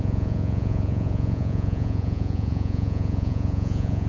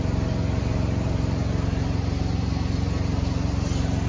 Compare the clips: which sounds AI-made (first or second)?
first